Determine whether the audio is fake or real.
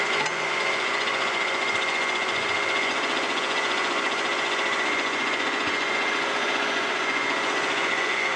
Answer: fake